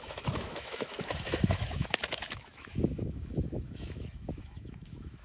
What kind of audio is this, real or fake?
fake